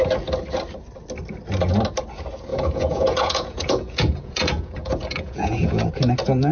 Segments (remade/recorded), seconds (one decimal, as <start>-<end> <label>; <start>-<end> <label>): 0.0-2.5 recorded; 2.5-5.9 remade; 5.9-6.5 recorded